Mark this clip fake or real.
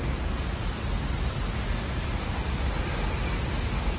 real